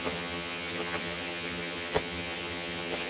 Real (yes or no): no